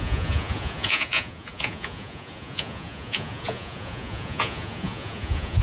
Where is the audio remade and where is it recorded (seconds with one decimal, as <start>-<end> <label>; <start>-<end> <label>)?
0.0-5.6 remade